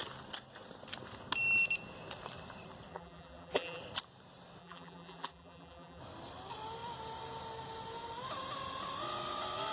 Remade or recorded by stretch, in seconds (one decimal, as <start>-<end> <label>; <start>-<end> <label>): 0.0-2.9 recorded; 2.9-3.8 remade; 3.8-4.6 recorded; 4.6-6.0 remade; 6.0-9.7 recorded